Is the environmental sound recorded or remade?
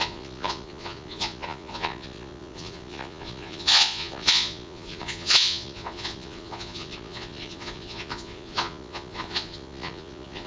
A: remade